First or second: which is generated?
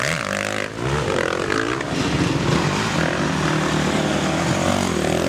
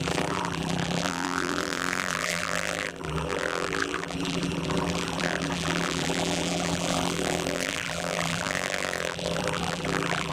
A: second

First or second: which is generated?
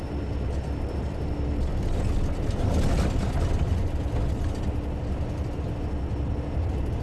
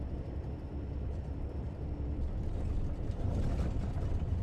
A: second